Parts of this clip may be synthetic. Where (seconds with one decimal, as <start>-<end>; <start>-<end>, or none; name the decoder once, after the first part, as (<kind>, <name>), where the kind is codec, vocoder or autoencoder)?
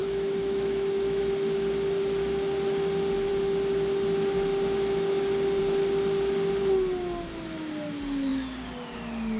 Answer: 0.0-1.2 (autoencoder, DAC-VAE)